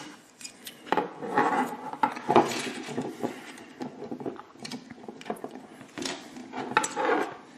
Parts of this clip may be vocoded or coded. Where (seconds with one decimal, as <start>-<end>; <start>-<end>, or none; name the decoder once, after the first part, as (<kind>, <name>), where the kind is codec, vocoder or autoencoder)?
0.0-6.4 (vocoder, Vocos)